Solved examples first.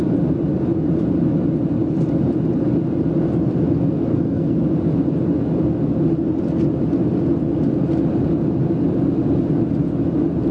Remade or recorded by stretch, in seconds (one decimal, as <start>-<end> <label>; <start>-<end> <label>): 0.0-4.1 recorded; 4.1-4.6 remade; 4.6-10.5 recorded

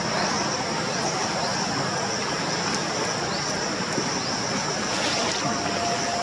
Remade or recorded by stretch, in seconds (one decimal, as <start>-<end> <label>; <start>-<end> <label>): 0.0-6.2 recorded

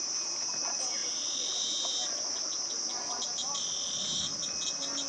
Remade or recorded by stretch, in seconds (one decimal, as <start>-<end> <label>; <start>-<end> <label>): 0.0-5.1 recorded

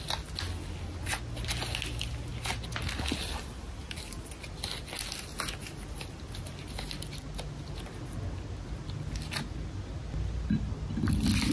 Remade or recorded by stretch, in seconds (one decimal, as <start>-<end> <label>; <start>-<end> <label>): 0.0-11.5 recorded

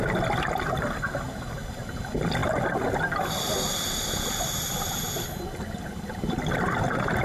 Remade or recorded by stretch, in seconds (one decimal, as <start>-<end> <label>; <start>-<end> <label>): 0.0-7.2 recorded